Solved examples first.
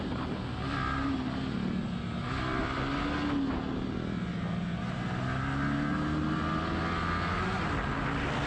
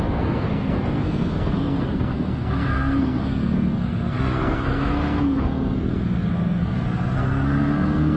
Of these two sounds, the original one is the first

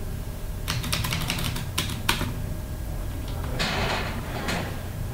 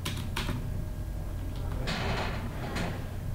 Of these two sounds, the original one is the second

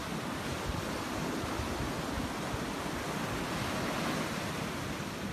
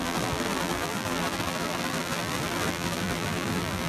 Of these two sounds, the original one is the first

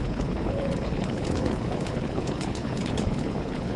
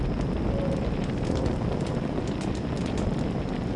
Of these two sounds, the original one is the second